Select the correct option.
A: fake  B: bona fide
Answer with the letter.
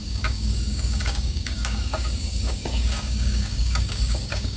A